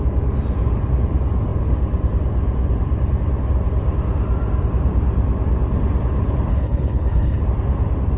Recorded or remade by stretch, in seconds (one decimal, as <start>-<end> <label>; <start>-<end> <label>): 0.0-6.5 recorded; 6.5-7.4 remade; 7.4-8.2 recorded

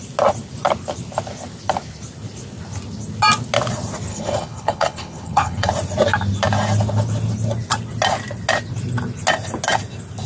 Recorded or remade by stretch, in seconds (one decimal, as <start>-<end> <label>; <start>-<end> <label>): 0.0-4.1 recorded; 4.1-5.7 remade; 5.7-10.3 recorded